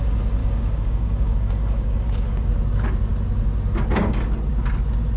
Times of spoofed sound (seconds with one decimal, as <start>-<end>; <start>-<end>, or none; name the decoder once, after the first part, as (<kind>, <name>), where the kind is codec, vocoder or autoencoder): 0.4-2.5 (codec, DAC)